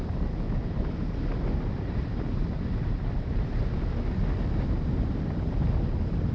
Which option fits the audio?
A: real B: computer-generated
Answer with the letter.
A